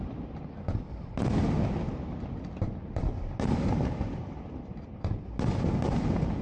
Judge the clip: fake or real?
real